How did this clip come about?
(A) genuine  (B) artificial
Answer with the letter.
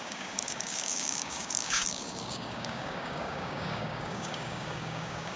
B